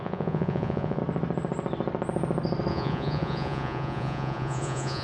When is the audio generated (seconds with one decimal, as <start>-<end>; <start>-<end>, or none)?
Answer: 0.0-1.0; 2.7-5.0